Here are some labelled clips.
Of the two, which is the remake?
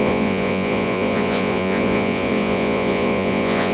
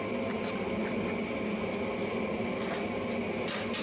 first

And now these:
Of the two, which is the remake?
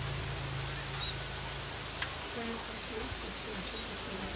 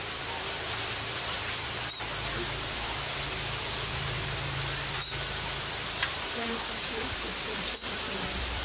second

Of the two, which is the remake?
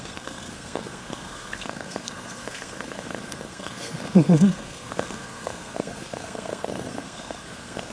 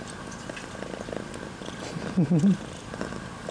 first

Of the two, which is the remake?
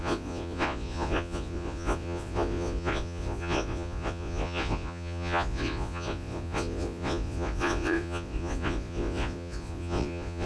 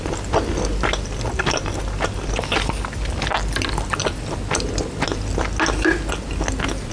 first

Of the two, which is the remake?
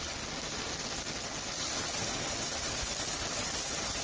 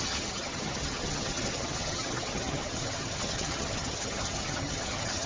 second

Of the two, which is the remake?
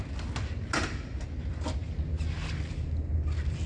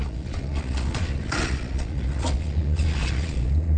second